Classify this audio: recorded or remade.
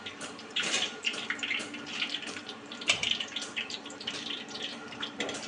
remade